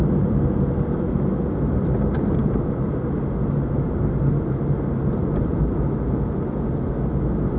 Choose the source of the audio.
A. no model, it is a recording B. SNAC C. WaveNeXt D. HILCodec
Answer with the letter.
A